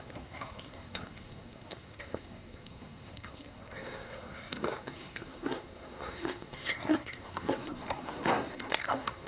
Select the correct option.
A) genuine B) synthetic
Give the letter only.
B